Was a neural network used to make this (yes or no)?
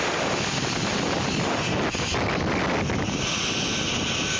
no